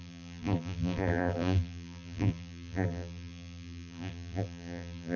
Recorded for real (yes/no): no